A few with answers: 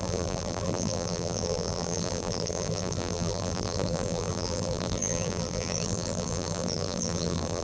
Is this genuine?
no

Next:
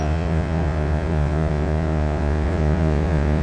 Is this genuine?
no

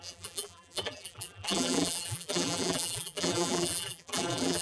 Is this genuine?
no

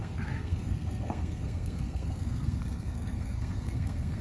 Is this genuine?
no